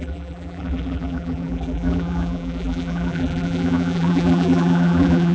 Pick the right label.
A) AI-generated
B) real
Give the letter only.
A